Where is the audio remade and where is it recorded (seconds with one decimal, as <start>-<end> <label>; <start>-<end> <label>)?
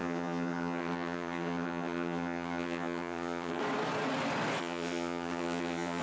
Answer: 0.0-3.6 remade; 3.6-4.6 recorded; 4.6-6.0 remade